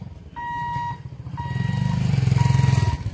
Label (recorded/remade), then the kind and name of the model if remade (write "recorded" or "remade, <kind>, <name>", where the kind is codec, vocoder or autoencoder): recorded